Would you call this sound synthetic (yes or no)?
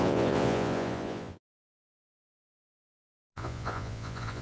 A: yes